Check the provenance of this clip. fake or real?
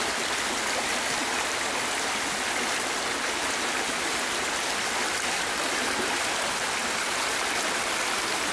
real